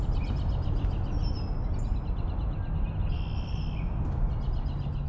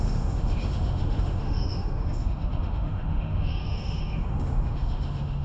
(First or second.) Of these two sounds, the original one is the first